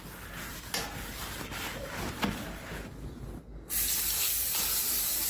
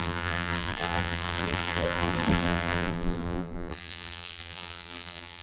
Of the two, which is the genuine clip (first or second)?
first